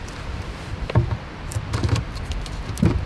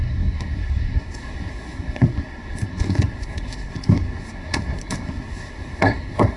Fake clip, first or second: second